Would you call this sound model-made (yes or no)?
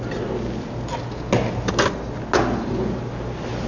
no